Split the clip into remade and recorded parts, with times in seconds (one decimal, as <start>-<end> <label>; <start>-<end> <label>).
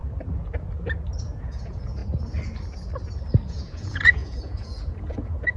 0.0-1.4 recorded; 1.4-2.0 remade; 2.0-3.5 recorded; 3.5-5.6 remade